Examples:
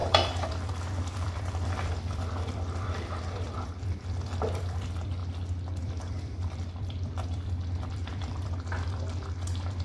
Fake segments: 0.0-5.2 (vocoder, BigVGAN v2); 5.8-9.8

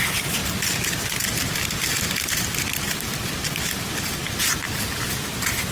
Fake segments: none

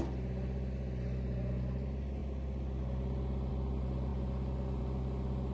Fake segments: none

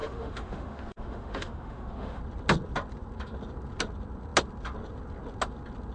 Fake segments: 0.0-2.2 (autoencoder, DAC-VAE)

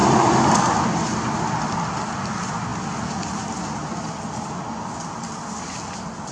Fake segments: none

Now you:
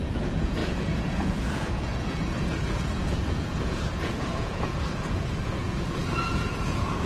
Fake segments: 0.0-7.1 (vocoder, Vocos)

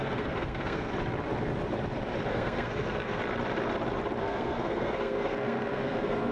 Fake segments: 0.0-0.9 (codec, SNAC); 2.3-3.2; 4.2-6.3

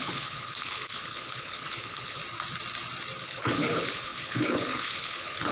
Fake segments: 0.0-2.2 (codec, HILCodec); 3.2-5.5